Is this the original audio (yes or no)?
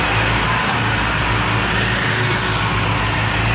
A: yes